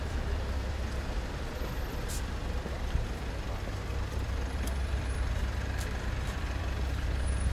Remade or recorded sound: remade